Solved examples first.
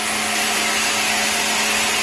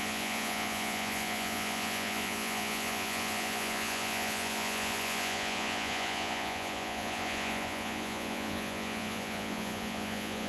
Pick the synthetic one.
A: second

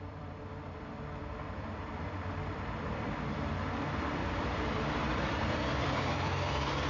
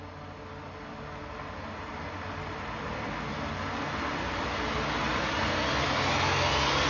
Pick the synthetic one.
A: first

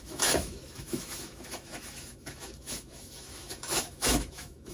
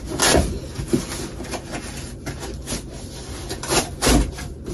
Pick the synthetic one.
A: first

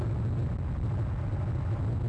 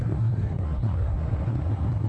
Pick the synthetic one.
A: second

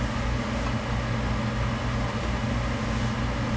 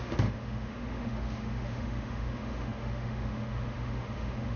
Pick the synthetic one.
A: second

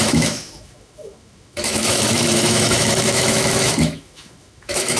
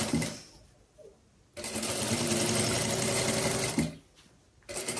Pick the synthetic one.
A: first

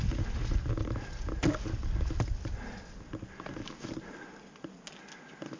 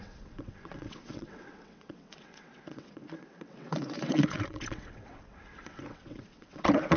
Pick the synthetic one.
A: second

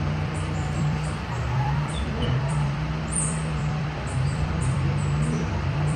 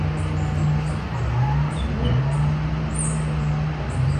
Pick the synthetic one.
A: first